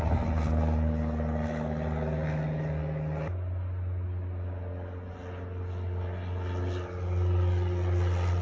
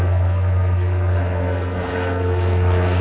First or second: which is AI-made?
second